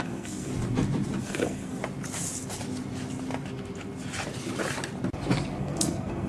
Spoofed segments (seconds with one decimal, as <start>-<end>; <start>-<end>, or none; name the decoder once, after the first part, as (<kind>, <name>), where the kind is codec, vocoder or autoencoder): 0.0-0.5 (codec, SNAC); 1.2-1.8; 5.6-6.3